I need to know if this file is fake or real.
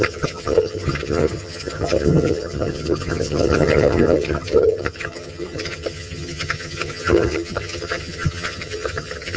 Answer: fake